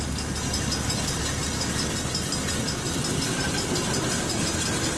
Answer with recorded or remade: recorded